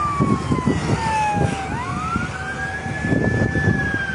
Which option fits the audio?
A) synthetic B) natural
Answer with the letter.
B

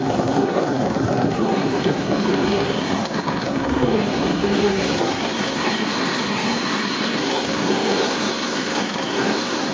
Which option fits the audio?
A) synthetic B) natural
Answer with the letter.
A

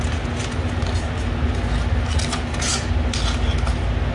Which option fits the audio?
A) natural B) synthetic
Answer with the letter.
A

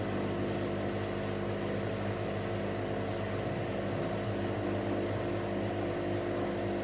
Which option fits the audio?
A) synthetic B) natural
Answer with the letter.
B